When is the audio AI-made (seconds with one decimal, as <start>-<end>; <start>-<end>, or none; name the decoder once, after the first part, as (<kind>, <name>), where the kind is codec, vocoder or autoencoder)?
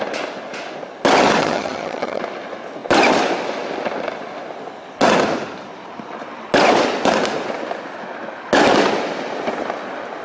1.4-2.2 (vocoder, HiFi-GAN)